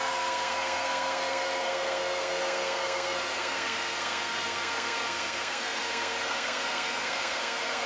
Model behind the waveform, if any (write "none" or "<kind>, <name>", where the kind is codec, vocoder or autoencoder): codec, SNAC